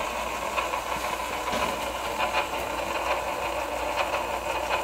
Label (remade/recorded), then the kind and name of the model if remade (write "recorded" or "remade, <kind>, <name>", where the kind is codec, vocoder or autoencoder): recorded